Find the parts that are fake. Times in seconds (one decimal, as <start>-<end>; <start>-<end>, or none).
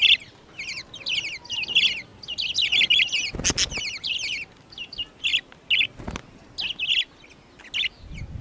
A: none